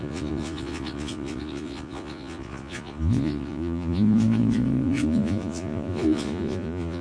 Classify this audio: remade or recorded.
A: remade